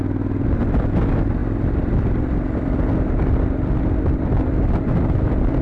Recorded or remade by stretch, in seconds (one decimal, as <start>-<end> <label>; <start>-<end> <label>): 0.0-1.4 recorded; 1.4-3.9 remade; 3.9-5.6 recorded